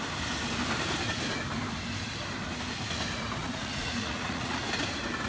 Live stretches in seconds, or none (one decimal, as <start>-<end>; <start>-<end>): 0.0-3.4; 4.6-5.3